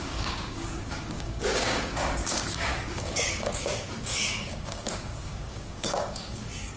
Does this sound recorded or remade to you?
remade